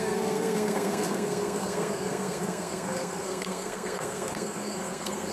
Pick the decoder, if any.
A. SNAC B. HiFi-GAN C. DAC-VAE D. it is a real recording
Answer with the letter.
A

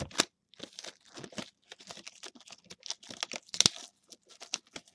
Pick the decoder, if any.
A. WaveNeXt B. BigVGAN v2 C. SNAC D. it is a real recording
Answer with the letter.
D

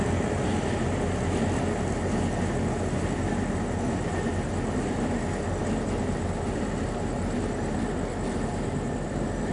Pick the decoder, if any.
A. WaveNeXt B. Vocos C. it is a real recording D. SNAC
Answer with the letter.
C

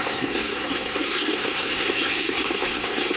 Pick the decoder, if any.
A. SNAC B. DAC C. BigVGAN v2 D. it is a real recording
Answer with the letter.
A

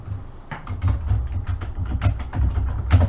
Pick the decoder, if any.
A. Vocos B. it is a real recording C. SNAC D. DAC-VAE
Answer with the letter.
B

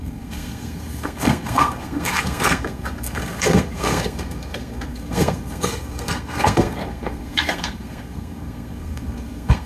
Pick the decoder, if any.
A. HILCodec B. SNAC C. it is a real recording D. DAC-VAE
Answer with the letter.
B